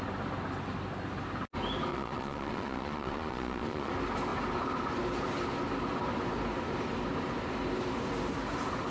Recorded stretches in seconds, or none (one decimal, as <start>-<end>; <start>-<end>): 0.0-1.9; 3.9-8.9